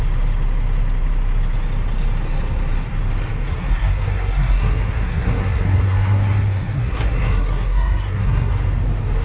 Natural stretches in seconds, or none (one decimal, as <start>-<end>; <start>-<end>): 0.0-3.5; 8.5-9.2